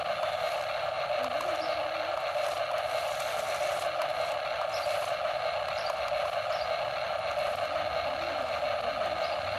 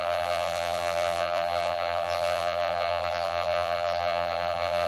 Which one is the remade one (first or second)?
second